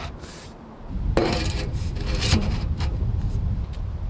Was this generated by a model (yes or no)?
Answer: yes